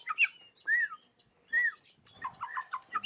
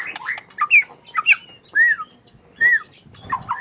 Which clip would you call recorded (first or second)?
second